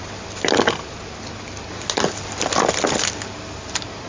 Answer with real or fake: real